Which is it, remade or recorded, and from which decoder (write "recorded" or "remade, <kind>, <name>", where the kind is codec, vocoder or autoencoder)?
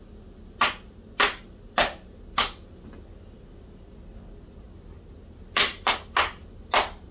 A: recorded